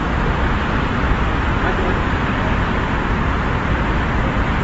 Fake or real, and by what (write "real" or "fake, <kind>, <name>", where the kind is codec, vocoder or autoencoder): real